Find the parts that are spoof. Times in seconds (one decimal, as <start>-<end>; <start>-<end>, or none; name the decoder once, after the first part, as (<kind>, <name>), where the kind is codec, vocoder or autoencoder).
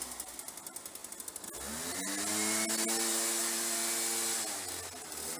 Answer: none